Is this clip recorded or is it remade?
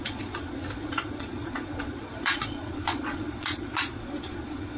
remade